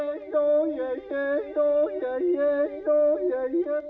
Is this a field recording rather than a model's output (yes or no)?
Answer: yes